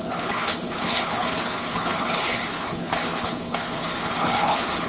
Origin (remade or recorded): remade